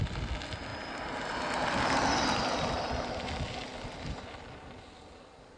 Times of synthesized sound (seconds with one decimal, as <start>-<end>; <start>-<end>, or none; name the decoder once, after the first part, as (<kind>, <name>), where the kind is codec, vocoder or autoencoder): none